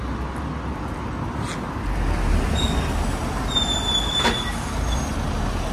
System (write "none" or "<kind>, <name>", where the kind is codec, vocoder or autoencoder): none